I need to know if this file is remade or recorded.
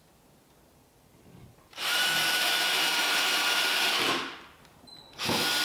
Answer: recorded